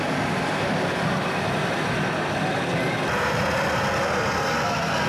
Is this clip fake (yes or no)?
no